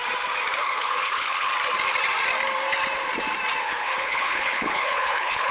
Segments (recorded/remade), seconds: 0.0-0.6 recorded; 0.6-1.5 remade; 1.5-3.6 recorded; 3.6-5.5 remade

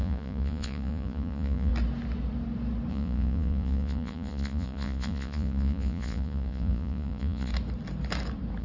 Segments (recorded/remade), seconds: 0.0-1.7 remade; 1.7-2.9 recorded; 2.9-7.5 remade; 7.5-8.6 recorded

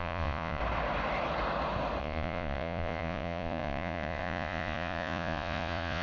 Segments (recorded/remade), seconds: 0.0-0.6 remade; 0.6-2.0 recorded; 2.0-6.0 remade

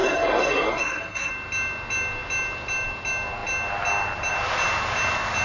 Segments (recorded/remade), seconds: 0.0-1.3 remade; 1.3-5.4 recorded